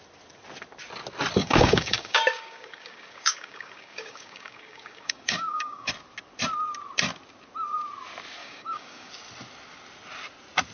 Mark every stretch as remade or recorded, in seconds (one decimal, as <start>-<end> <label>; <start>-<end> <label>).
0.0-1.4 recorded; 1.4-5.9 remade; 5.9-8.4 recorded; 8.4-9.1 remade; 9.1-10.7 recorded